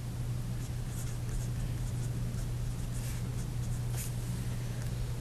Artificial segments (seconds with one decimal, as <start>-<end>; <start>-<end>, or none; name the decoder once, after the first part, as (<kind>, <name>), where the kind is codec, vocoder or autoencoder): none